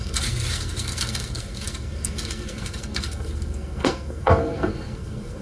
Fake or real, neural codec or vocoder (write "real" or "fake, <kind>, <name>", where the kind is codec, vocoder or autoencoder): fake, codec, SNAC